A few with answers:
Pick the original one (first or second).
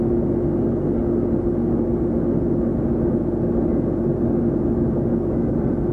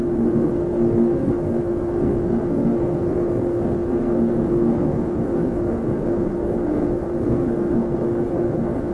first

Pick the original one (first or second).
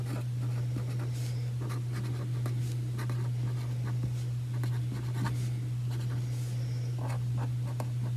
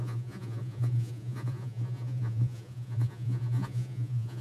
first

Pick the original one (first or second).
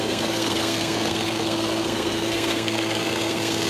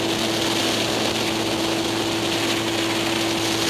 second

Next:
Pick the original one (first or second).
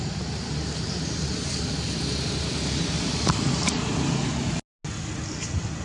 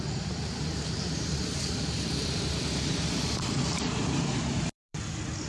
first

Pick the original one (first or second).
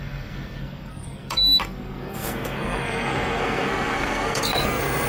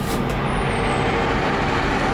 second